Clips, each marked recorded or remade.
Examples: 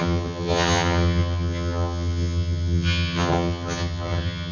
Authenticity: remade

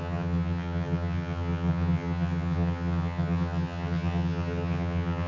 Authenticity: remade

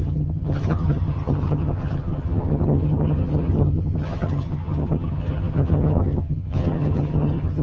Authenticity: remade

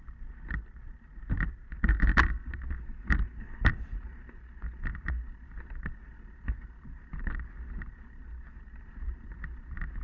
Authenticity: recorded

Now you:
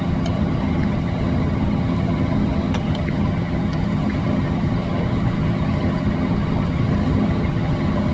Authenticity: remade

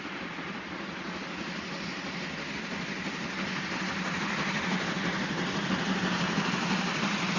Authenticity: recorded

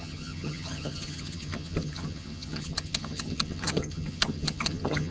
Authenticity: remade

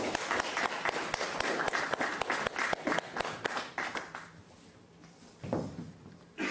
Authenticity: recorded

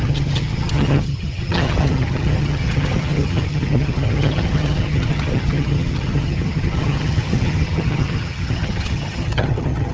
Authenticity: remade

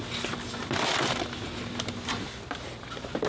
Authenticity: recorded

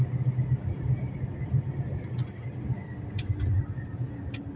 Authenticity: recorded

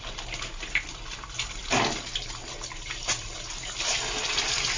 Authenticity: recorded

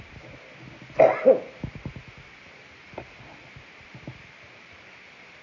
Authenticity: recorded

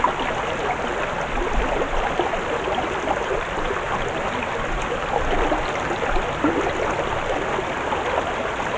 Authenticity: recorded